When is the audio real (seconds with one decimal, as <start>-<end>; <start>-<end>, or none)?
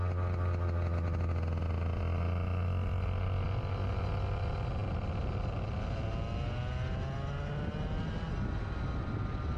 0.0-9.6